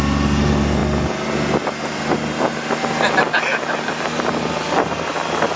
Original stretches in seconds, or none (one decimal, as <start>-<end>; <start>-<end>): 0.0-5.6